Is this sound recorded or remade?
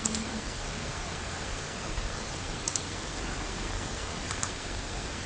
remade